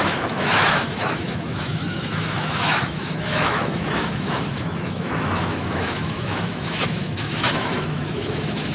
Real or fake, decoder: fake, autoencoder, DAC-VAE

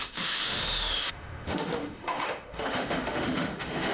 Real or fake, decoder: fake, autoencoder, DAC-VAE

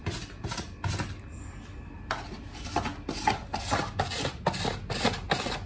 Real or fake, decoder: real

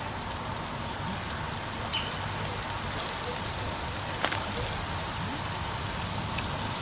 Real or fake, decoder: real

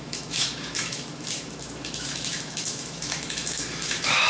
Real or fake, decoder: fake, autoencoder, DAC-VAE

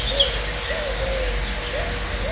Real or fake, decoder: real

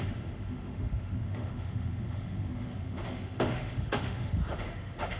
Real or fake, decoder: fake, autoencoder, DAC-VAE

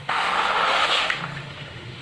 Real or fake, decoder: fake, autoencoder, DAC-VAE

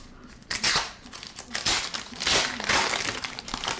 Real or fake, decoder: real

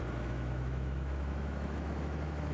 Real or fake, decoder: fake, autoencoder, DAC-VAE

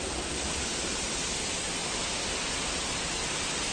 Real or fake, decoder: real